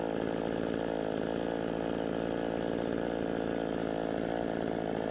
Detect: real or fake real